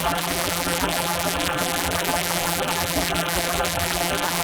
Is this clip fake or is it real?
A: fake